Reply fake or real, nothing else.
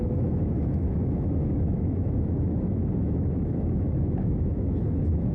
fake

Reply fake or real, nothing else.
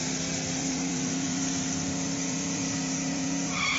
fake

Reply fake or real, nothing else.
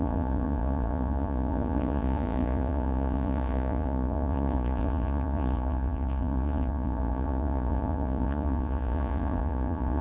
fake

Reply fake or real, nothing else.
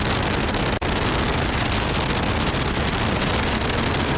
real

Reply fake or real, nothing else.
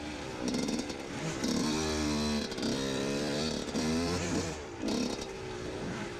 fake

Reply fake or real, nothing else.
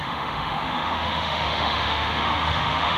fake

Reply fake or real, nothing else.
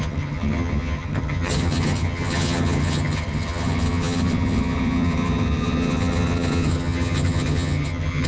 fake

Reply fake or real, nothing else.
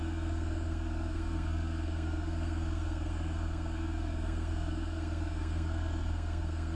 fake